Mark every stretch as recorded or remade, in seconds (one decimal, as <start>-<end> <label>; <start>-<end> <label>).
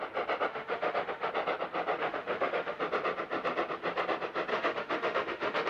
0.0-0.5 recorded; 0.5-1.3 remade; 1.3-2.0 recorded; 2.0-2.8 remade; 2.8-4.5 recorded; 4.5-5.7 remade